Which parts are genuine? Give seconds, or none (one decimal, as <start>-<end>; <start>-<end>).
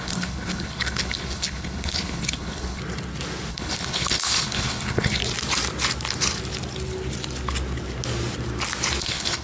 2.8-3.5; 5.2-9.0